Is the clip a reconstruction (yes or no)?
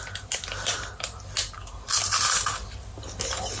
no